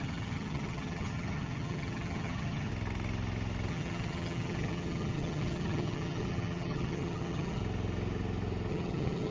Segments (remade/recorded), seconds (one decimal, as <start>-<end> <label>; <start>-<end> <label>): 0.0-2.7 remade; 2.7-3.7 recorded; 3.7-7.6 remade; 7.6-8.7 recorded; 8.7-9.3 remade